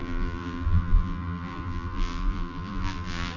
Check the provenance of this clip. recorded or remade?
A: remade